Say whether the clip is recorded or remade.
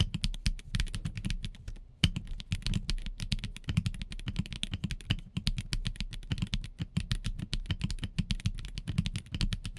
recorded